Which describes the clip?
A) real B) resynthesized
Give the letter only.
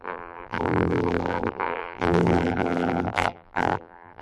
B